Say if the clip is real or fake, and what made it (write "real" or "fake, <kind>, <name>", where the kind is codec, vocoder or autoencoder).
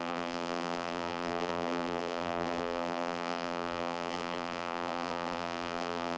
fake, vocoder, BigVGAN v2